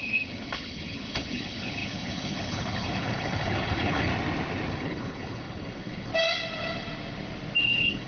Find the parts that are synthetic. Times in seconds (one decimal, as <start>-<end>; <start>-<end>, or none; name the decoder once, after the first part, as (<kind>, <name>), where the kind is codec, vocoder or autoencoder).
0.0-4.1 (codec, HILCodec); 4.7-6.1; 7.6-8.1